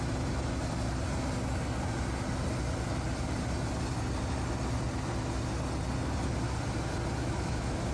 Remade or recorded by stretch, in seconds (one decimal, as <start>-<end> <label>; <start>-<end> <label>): 0.0-7.2 recorded; 7.2-7.9 remade